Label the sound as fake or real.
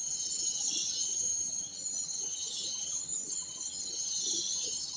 fake